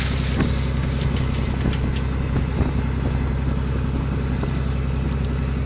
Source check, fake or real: real